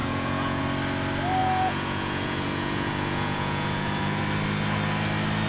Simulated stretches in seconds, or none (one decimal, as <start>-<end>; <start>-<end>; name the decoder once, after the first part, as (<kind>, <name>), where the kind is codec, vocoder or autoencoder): 0.0-0.6 (vocoder, Vocos); 1.4-4.2